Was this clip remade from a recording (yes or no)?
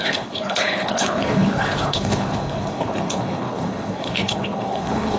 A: yes